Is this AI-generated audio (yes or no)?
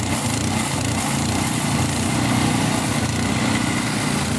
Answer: no